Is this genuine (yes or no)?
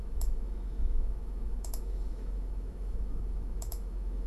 no